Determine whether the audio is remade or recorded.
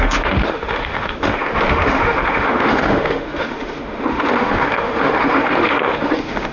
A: remade